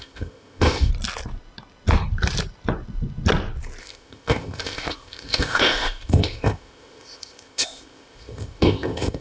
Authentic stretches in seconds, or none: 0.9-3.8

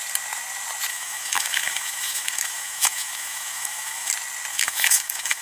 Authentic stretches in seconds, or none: 0.0-0.9; 4.1-4.5

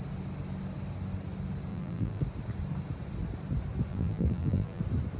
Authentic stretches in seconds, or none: 0.0-1.7; 2.2-3.9; 4.8-5.2

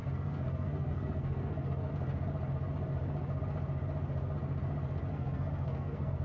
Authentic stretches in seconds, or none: 1.9-5.1

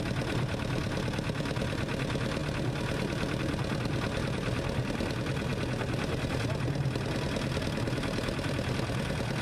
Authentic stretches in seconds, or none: 0.0-9.4

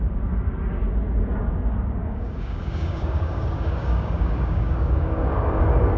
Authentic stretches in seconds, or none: 0.0-2.0; 5.6-6.0

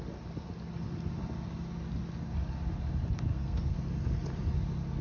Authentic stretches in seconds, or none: 0.0-3.3; 3.8-5.0

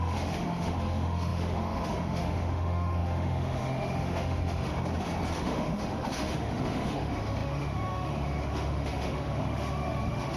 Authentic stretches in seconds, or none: 4.7-5.4